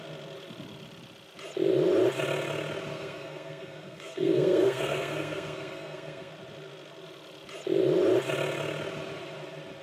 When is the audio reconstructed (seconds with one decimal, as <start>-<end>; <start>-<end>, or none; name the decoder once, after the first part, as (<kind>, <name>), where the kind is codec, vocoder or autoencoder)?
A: 2.9-6.3 (codec, SNAC)